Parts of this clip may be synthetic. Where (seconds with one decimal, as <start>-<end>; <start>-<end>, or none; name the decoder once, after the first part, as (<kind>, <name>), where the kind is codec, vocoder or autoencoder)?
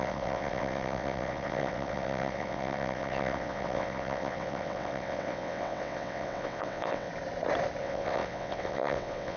0.0-7.1 (vocoder, WaveNeXt); 7.8-9.4